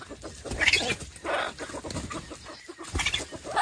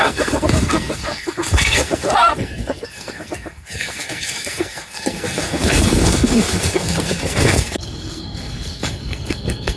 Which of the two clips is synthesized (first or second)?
second